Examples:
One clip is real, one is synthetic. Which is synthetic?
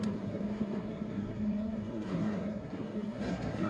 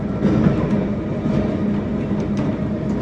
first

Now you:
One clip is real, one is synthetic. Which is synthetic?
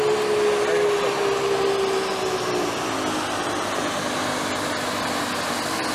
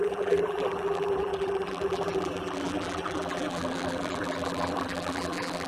second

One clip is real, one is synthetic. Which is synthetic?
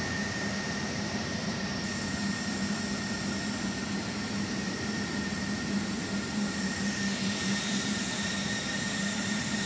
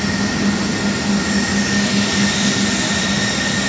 first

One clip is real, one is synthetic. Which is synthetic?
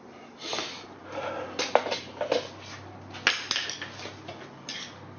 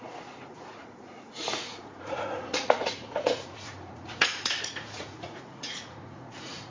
second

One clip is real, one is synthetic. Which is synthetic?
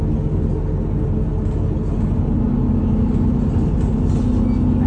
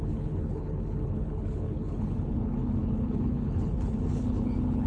second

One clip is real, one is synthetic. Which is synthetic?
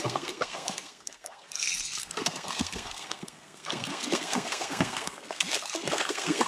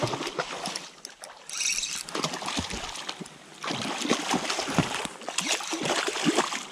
first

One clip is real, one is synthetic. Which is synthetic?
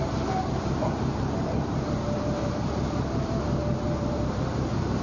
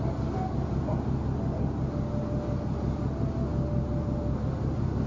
first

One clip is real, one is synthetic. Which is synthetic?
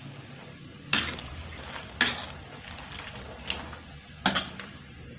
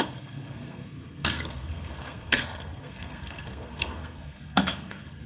second